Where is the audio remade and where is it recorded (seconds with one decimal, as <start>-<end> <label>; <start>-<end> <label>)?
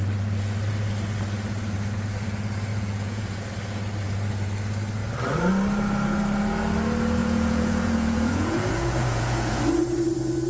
0.0-2.7 recorded; 2.7-3.4 remade; 3.4-7.2 recorded; 7.2-9.6 remade; 9.6-10.5 recorded